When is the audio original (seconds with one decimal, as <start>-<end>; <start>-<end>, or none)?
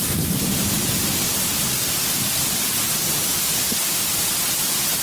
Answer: 0.0-5.0